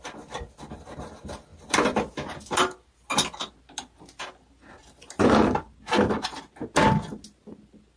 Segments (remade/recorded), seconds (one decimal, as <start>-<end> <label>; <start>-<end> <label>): 0.0-8.0 recorded